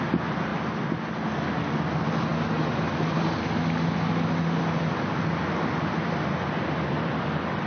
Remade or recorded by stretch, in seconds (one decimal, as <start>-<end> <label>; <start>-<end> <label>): 0.0-7.7 recorded